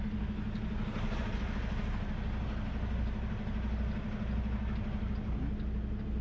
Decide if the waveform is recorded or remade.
recorded